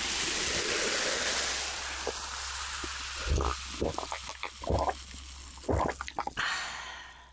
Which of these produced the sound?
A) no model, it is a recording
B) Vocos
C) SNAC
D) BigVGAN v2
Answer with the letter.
A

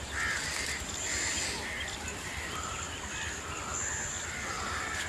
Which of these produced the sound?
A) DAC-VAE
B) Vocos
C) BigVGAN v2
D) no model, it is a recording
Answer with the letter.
C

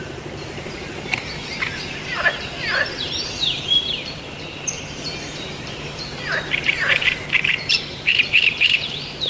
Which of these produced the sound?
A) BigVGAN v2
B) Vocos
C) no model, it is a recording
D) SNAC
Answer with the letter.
A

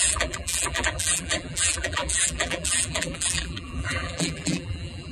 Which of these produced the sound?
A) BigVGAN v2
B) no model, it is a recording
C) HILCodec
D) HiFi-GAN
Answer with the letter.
A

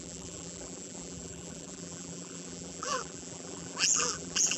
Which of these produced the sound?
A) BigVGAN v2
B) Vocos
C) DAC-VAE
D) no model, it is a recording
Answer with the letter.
A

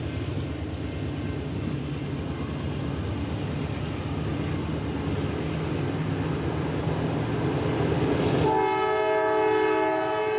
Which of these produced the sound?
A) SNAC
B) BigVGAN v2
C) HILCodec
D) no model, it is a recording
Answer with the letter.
D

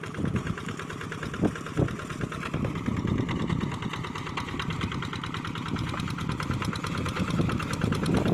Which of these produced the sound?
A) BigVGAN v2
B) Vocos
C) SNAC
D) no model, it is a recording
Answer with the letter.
D